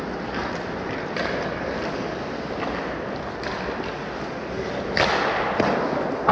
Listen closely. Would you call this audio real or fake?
real